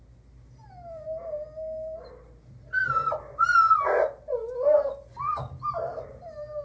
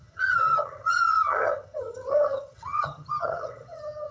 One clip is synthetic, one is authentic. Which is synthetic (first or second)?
second